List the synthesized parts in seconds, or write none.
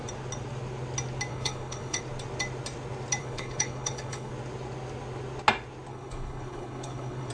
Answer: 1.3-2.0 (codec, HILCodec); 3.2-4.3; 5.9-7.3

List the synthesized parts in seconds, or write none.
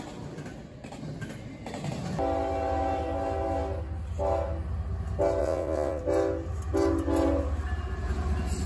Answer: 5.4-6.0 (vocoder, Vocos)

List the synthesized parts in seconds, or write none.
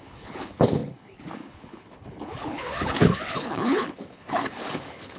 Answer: 0.0-5.2 (codec, HILCodec)